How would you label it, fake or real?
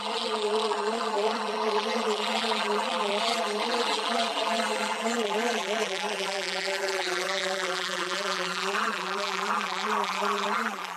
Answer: fake